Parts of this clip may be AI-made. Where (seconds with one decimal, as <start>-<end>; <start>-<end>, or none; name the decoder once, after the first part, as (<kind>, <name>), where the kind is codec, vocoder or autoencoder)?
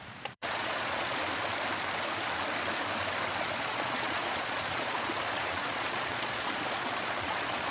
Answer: 0.0-1.2 (vocoder, Vocos); 3.4-7.7